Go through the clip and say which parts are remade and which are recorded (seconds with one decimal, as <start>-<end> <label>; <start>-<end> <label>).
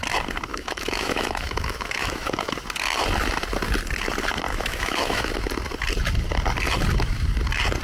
0.0-0.5 recorded; 0.5-2.5 remade; 2.5-4.5 recorded; 4.5-5.3 remade; 5.3-7.8 recorded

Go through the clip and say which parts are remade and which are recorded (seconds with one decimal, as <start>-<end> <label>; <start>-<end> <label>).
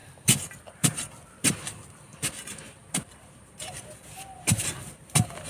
0.0-3.3 remade; 3.3-5.5 recorded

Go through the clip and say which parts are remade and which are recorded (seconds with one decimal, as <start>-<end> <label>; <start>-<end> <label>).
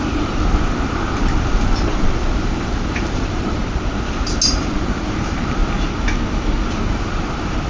0.0-3.6 remade; 3.6-4.5 recorded; 4.5-5.6 remade; 5.6-6.9 recorded; 6.9-7.7 remade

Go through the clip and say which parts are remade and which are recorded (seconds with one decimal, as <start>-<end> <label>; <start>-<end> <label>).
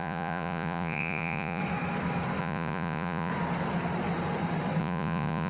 0.0-1.6 remade; 1.6-2.4 recorded; 2.4-3.3 remade; 3.3-4.8 recorded; 4.8-5.5 remade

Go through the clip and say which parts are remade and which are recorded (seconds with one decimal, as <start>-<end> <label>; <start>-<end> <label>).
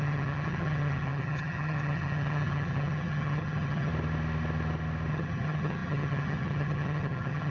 0.0-3.9 remade; 3.9-5.1 recorded; 5.1-7.5 remade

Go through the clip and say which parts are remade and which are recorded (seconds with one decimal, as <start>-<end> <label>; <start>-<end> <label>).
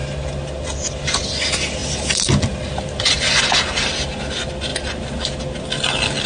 0.0-6.3 recorded